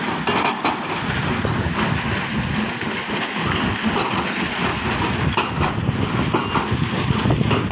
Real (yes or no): yes